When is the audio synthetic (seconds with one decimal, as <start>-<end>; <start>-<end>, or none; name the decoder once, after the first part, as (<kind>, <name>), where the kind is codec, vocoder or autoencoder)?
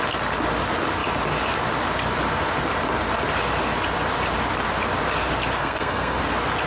5.6-6.2 (codec, SNAC)